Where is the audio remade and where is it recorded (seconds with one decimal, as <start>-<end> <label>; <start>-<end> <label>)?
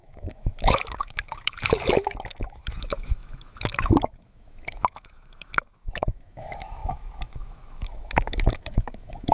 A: 0.0-9.3 remade